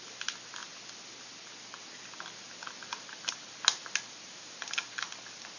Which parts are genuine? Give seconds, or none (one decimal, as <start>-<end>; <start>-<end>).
0.0-5.6